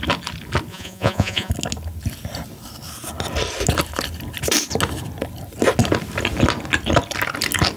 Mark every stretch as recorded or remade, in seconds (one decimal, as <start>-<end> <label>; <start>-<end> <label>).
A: 0.0-0.7 recorded; 0.7-1.5 remade; 1.5-7.8 recorded